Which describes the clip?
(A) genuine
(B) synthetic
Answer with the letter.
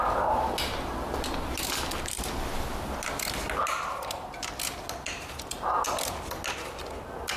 A